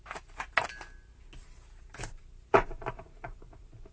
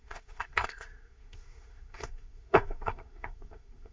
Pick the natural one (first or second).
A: first